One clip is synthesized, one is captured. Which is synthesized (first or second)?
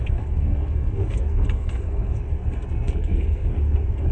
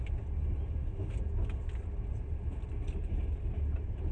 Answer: first